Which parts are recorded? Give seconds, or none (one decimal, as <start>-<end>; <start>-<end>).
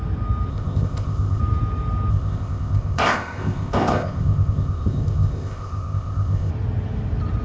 0.0-0.5; 1.4-2.1; 6.5-7.4